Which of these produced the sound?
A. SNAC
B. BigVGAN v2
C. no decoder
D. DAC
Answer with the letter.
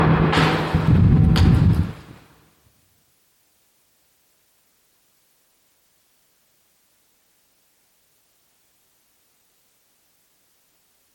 C